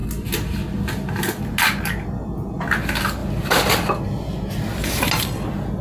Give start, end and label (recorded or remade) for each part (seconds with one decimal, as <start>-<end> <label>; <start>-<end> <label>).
0.0-5.8 recorded